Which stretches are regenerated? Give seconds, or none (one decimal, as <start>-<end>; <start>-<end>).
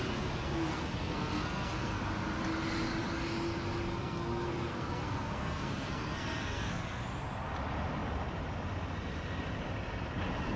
0.4-2.0; 4.0-7.0